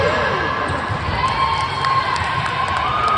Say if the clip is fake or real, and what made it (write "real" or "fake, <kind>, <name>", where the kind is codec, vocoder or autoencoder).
real